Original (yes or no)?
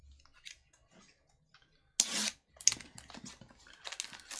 yes